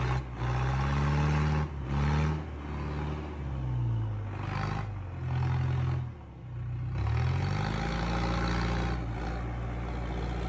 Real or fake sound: real